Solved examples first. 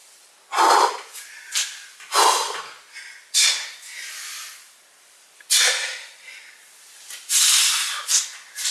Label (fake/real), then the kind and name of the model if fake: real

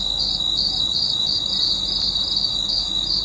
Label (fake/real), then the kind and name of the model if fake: real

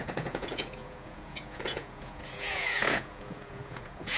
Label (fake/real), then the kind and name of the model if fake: fake, vocoder, Vocos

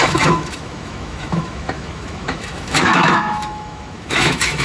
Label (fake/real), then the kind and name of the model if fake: fake, autoencoder, DAC-VAE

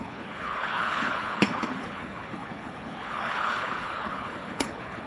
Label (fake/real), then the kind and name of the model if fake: fake, codec, HILCodec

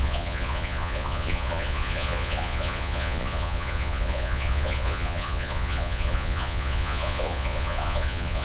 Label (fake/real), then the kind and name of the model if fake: fake, vocoder, Vocos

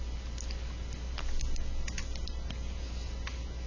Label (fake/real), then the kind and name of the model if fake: real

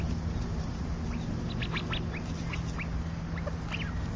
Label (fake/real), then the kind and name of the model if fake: real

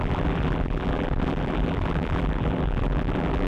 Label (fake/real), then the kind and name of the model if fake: fake, vocoder, BigVGAN v2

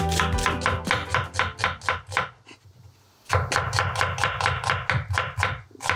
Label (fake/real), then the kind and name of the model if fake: real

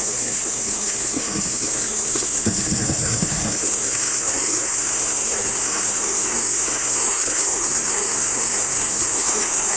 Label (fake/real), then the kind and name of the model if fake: fake, codec, SNAC